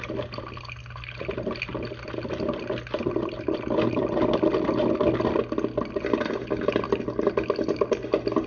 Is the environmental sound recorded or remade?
recorded